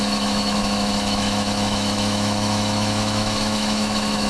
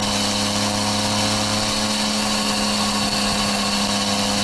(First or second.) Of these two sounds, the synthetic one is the first